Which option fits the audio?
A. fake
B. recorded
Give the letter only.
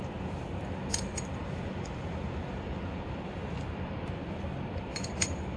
A